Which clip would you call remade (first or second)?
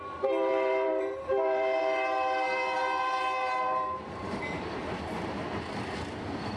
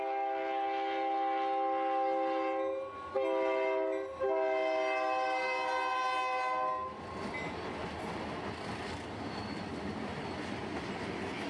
first